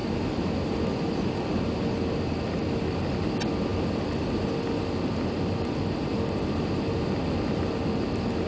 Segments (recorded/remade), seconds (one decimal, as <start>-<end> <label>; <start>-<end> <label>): 0.0-8.5 recorded